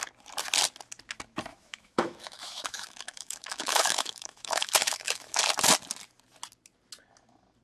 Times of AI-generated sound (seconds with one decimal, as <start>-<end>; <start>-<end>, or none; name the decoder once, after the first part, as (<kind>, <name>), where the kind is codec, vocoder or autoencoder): 1.5-5.4 (autoencoder, DAC-VAE)